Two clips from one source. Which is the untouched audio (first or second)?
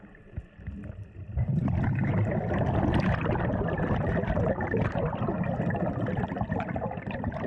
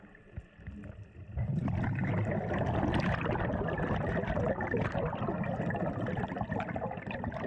second